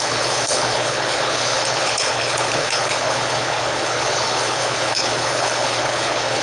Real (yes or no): no